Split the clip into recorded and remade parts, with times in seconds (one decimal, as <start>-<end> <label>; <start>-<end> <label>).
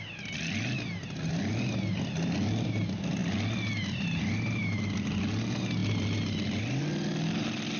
0.0-7.8 recorded